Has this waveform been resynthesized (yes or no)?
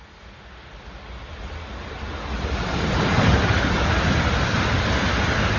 no